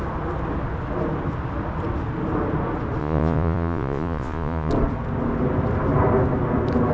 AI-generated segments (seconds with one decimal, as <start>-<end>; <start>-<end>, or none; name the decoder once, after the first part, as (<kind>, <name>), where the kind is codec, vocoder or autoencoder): 3.0-4.7 (vocoder, Vocos)